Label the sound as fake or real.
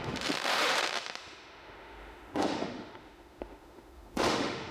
fake